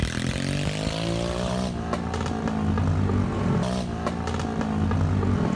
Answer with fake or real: real